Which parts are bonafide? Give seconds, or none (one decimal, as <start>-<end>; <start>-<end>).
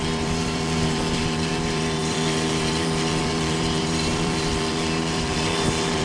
none